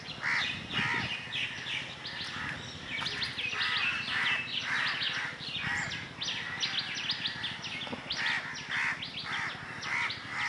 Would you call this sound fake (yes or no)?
no